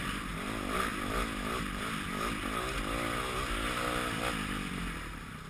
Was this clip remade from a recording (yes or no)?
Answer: no